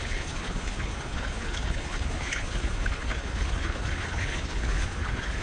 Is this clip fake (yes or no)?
yes